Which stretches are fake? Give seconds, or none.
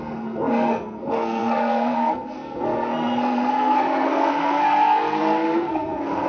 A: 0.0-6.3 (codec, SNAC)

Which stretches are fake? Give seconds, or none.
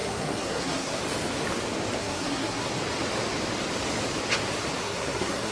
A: 0.0-1.0 (codec, SNAC); 2.0-2.7; 4.8-5.5